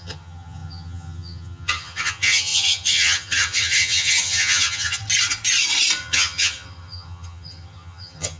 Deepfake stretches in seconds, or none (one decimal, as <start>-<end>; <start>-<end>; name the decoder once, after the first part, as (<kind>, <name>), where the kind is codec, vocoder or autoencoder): 0.0-5.0 (vocoder, HiFi-GAN); 6.0-8.4